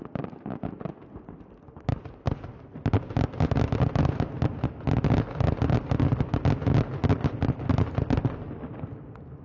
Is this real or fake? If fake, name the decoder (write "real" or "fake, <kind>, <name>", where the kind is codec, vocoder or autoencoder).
real